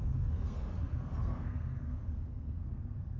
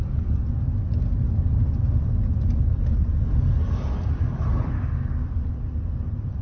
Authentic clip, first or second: second